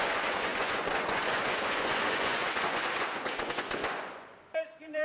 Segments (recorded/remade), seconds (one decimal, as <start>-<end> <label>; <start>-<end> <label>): 0.0-5.0 remade